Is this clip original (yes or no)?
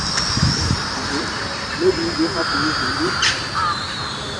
yes